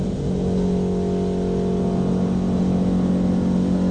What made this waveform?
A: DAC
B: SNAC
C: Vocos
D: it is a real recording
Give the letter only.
D